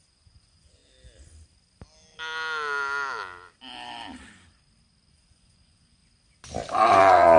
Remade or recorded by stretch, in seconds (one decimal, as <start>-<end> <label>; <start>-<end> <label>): 0.0-0.8 remade; 0.8-5.1 recorded; 5.1-6.0 remade; 6.0-7.0 recorded; 7.0-7.4 remade